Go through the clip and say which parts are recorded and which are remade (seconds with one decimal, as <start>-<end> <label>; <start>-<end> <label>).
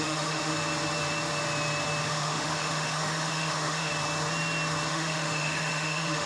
0.0-0.5 remade; 0.5-2.0 recorded; 2.0-3.9 remade; 3.9-4.9 recorded; 4.9-6.3 remade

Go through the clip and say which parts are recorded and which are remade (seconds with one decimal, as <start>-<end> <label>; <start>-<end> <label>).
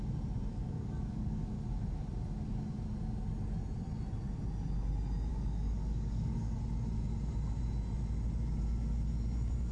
0.0-0.5 recorded; 0.5-1.5 remade; 1.5-5.3 recorded; 5.3-6.6 remade; 6.6-9.7 recorded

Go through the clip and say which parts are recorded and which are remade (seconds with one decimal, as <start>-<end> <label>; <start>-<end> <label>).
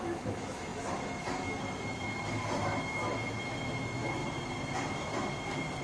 0.0-4.2 remade; 4.2-5.8 recorded